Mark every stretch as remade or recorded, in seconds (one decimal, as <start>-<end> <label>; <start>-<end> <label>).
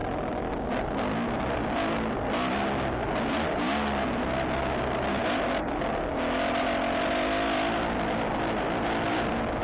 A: 0.0-9.6 recorded